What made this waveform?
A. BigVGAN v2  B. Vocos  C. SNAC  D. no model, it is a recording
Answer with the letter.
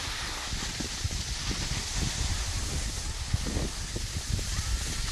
D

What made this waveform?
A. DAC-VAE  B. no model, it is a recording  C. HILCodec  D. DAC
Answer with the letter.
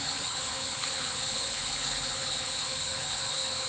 C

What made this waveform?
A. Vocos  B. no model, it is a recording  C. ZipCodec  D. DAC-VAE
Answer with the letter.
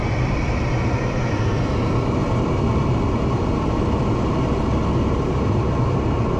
B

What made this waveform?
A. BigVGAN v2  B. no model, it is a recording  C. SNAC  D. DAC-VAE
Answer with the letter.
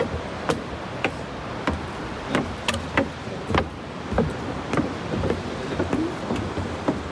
B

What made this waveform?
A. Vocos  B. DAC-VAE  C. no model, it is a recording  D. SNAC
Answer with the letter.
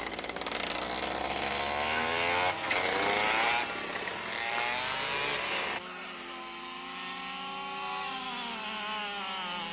C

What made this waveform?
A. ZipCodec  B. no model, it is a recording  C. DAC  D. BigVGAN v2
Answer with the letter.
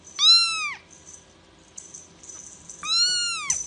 B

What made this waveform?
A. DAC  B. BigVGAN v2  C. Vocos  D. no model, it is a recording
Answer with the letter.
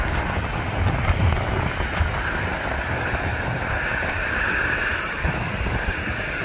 B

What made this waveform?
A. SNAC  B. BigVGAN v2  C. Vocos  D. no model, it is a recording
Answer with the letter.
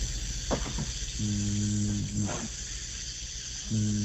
D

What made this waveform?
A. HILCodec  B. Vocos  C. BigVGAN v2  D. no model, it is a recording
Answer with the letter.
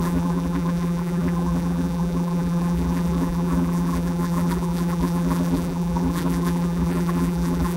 C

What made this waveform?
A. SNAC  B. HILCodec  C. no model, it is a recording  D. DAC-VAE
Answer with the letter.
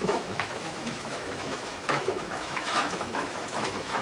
D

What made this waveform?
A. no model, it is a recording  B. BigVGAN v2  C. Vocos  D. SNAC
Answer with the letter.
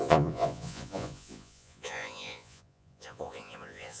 C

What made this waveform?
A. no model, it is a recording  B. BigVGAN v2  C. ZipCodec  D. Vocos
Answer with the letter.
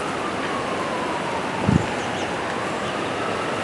A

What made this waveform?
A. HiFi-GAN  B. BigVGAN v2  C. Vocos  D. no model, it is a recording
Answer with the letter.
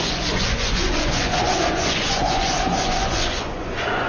C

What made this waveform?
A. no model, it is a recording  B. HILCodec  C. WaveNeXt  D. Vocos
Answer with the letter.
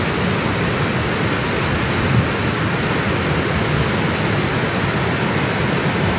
A